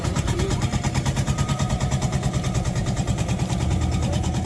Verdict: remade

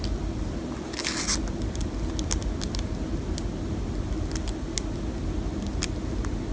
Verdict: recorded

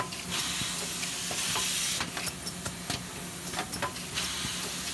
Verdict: recorded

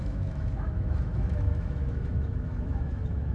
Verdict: remade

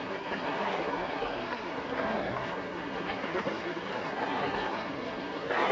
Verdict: remade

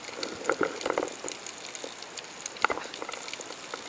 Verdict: recorded